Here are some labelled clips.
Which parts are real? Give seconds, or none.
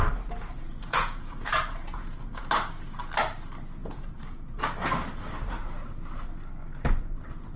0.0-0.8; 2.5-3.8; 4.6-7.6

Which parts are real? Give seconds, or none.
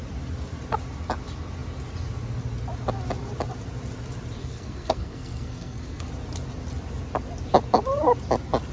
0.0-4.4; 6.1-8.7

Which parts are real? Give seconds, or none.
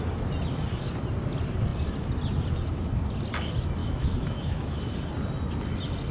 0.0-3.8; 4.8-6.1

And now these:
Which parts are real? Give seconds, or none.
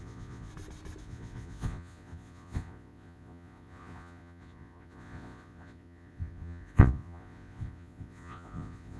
0.5-1.0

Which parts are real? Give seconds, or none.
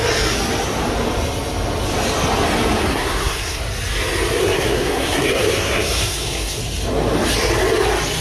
0.0-2.9; 3.6-4.4; 6.6-8.2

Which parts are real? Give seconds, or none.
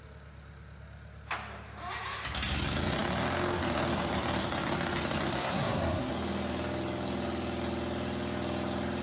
0.0-5.4; 6.1-9.0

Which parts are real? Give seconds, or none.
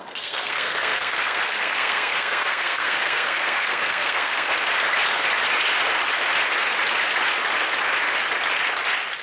4.5-9.2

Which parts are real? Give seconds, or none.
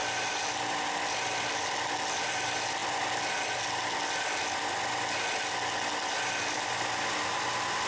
0.0-7.9